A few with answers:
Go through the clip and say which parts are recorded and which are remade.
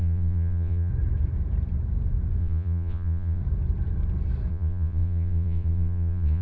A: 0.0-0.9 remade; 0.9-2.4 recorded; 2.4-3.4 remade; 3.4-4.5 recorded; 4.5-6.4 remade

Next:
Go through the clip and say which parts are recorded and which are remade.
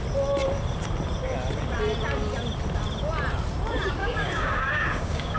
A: 0.0-4.0 recorded; 4.0-5.4 remade